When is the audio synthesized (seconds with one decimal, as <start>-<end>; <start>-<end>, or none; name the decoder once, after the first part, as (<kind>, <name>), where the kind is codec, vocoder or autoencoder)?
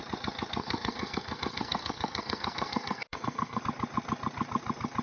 0.6-3.6 (codec, SNAC)